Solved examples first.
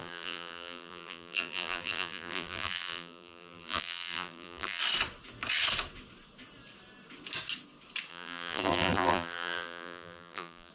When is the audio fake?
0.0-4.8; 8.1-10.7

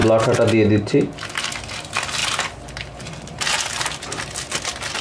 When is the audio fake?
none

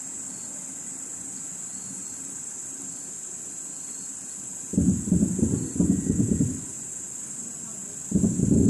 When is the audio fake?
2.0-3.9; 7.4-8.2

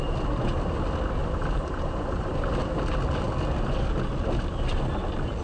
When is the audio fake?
1.2-2.3

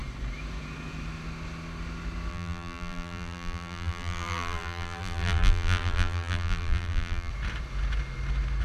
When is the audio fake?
2.3-7.3

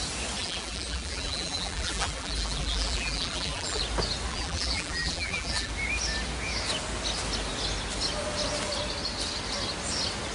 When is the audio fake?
0.4-3.8; 4.3-5.7